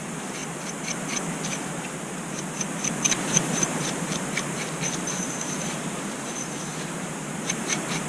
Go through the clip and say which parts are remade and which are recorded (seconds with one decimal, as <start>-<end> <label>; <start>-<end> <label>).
0.0-0.4 remade; 0.4-2.3 recorded; 2.3-8.1 remade